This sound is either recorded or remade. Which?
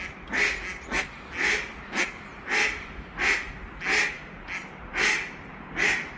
recorded